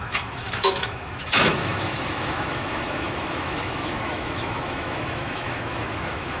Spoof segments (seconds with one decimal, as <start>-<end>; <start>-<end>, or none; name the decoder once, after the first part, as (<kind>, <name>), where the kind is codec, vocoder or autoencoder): 0.0-6.4 (autoencoder, DAC-VAE)